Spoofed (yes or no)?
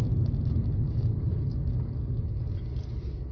no